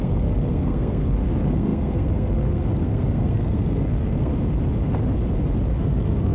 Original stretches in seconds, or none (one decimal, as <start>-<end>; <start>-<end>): 4.3-5.7